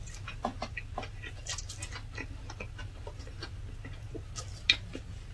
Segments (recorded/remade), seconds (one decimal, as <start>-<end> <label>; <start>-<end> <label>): 0.0-2.8 recorded; 2.8-3.5 remade; 3.5-5.3 recorded